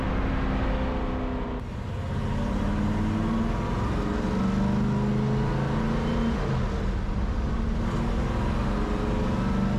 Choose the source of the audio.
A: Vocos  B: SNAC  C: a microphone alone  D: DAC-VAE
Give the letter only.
C